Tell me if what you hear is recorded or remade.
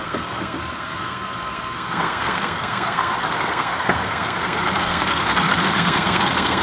remade